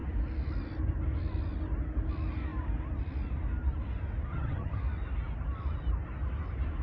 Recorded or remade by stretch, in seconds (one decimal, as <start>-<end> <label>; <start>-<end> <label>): 0.0-4.3 recorded; 4.3-4.8 remade; 4.8-6.8 recorded